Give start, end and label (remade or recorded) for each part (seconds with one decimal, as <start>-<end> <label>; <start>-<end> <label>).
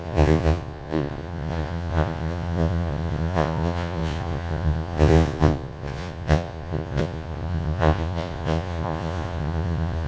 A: 0.0-10.1 remade